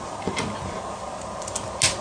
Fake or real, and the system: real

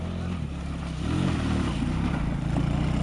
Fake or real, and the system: real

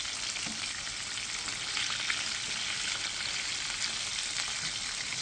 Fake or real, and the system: real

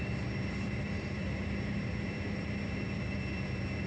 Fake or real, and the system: fake, vocoder, BigVGAN v2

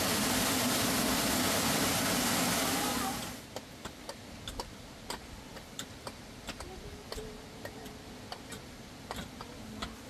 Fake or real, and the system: real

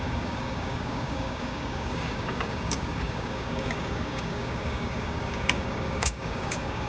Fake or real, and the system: fake, codec, DAC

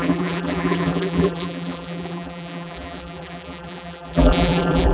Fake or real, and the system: fake, vocoder, BigVGAN v2